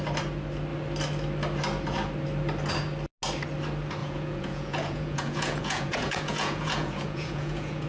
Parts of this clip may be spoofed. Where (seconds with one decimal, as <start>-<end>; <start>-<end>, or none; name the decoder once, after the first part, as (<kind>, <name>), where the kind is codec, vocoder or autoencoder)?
4.0-7.9 (vocoder, Vocos)